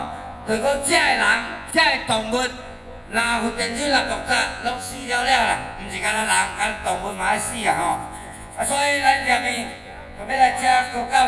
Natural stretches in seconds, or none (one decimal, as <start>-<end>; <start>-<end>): 1.7-2.6